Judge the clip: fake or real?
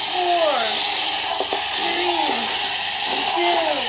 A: real